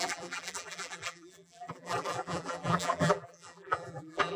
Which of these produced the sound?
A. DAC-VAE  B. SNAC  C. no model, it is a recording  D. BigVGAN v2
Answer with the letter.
D